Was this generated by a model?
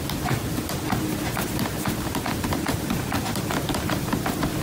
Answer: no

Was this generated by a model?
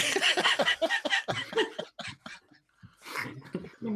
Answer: no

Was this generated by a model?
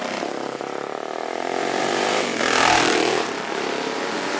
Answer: yes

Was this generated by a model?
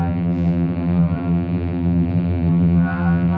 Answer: yes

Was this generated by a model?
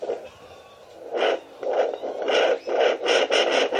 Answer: no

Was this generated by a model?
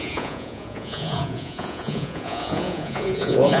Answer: yes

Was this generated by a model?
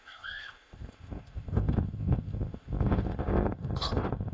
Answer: yes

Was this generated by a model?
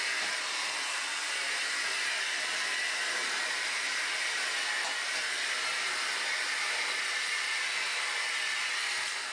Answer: no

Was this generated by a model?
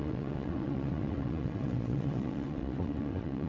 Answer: yes